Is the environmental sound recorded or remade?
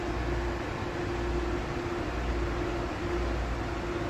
recorded